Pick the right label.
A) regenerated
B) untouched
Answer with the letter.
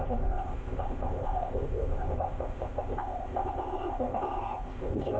A